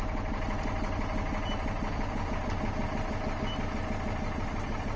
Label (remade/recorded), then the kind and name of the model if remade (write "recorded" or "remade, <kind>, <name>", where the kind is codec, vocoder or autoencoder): recorded